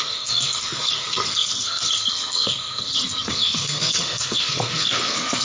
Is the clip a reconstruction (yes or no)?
yes